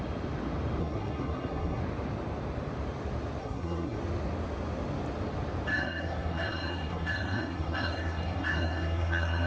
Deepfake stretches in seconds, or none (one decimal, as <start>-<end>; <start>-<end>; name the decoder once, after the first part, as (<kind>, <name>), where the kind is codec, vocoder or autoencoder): 0.8-1.8 (codec, SNAC); 3.4-4.0; 5.7-9.5